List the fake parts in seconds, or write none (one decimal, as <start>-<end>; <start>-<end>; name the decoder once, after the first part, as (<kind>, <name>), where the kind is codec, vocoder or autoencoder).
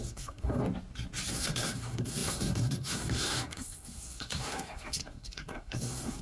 0.0-0.6 (codec, SNAC); 1.3-6.2